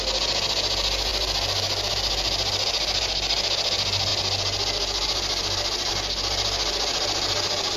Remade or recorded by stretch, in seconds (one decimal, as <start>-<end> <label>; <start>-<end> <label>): 0.0-7.8 recorded